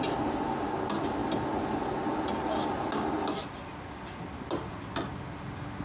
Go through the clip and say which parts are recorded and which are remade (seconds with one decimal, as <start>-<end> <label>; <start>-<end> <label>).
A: 0.0-5.8 recorded